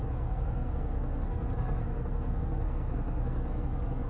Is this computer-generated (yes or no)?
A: yes